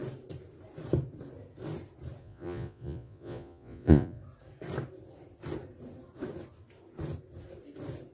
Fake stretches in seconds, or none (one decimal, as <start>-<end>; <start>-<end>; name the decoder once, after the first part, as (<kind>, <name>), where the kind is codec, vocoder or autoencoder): 2.2-4.2 (vocoder, Vocos)